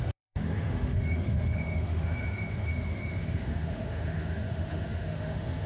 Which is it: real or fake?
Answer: fake